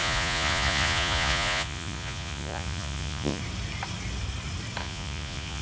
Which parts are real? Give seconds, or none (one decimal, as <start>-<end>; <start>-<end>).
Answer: 3.4-4.8